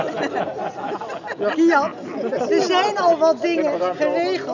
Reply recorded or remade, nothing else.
recorded